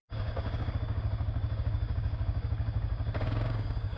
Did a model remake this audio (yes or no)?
yes